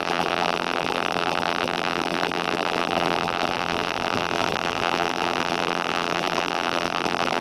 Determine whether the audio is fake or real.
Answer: fake